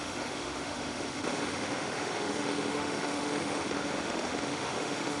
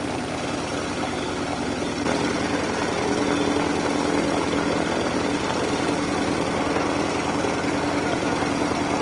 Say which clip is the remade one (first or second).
first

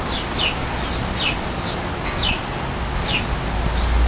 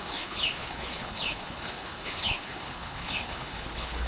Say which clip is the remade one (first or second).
second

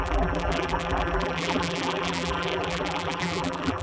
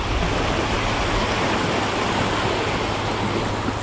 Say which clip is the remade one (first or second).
first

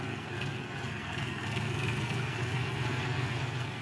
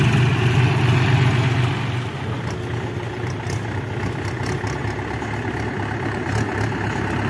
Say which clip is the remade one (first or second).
first